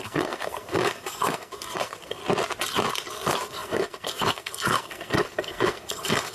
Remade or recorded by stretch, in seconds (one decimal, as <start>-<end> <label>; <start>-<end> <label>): 0.0-2.2 remade; 2.2-3.1 recorded; 3.1-6.3 remade